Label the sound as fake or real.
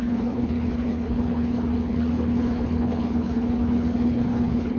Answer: fake